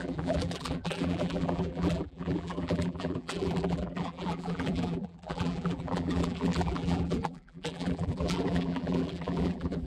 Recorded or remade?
remade